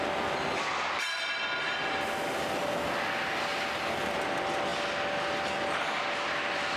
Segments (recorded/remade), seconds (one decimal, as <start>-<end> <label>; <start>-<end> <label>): 0.0-6.8 recorded